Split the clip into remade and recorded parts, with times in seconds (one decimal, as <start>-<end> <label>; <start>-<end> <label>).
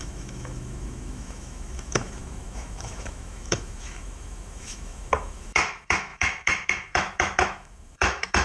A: 0.0-8.4 remade